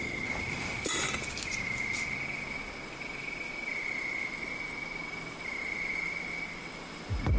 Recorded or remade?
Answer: recorded